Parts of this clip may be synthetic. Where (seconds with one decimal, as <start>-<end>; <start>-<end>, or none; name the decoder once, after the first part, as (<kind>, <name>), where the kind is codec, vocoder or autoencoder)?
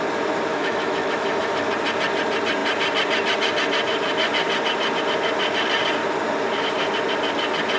0.5-1.7 (autoencoder, DAC-VAE)